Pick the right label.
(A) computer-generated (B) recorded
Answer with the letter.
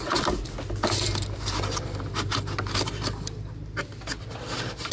B